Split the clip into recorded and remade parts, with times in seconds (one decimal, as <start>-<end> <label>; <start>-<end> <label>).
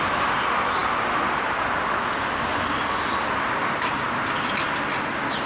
0.0-5.5 recorded